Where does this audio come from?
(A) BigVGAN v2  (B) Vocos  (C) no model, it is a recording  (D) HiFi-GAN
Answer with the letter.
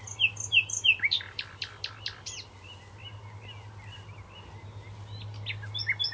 C